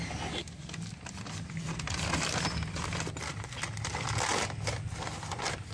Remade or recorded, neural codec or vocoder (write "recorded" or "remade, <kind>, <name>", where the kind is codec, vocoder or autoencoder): recorded